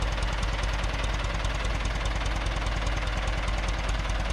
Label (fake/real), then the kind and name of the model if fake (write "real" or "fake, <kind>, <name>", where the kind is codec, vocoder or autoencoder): real